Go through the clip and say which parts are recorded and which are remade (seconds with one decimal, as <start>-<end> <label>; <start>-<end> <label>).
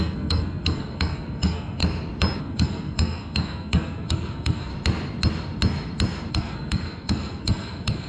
0.0-1.8 remade; 1.8-2.4 recorded; 2.4-4.7 remade; 4.7-6.3 recorded; 6.3-8.1 remade